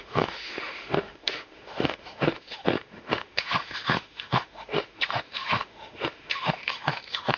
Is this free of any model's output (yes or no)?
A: no